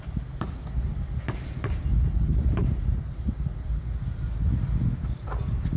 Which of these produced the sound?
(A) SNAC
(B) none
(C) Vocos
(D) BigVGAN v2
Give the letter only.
B